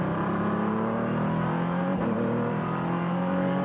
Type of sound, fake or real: fake